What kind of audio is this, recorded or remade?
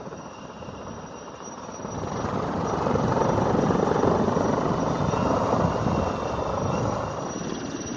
remade